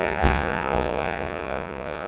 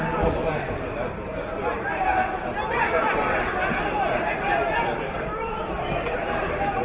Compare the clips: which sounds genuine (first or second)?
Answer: second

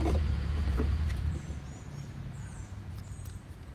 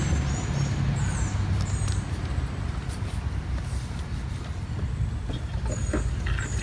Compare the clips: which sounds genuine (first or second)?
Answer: second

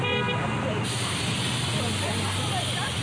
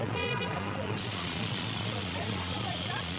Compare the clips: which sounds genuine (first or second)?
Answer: first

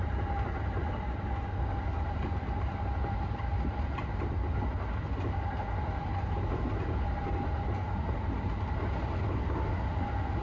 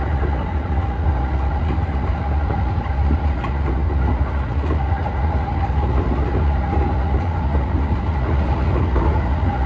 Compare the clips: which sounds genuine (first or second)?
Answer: first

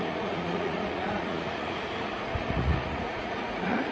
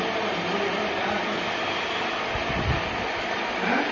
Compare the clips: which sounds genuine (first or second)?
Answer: second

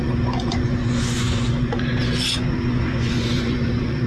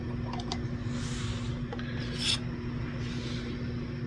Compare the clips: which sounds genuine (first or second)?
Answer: second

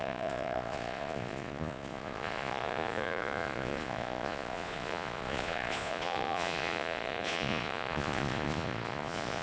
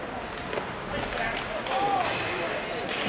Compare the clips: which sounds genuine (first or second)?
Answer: second